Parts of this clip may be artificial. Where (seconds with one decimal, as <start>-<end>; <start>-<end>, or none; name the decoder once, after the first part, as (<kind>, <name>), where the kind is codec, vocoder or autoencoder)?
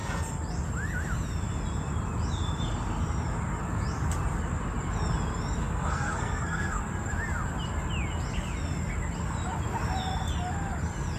5.6-6.8 (codec, SNAC)